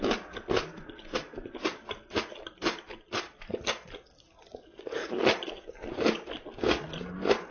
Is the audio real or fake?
real